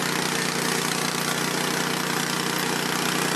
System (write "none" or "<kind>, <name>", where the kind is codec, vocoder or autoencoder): none